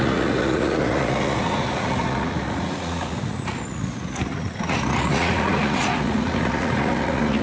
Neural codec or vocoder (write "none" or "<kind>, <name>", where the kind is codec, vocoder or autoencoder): vocoder, Vocos